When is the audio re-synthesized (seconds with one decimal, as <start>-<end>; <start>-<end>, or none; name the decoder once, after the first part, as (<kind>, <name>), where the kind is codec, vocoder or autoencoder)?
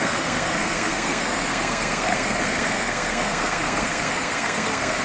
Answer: 0.0-5.0 (codec, SNAC)